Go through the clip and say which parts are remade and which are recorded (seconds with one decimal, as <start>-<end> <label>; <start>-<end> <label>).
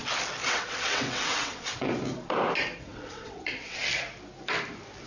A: 0.0-0.4 recorded; 0.4-1.9 remade; 1.9-2.9 recorded; 2.9-3.8 remade; 3.8-5.1 recorded